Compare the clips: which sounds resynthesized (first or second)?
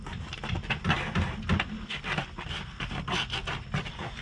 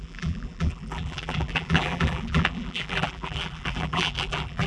second